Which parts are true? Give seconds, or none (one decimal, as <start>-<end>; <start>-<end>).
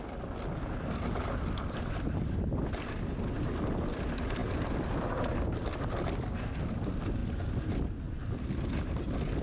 0.0-9.4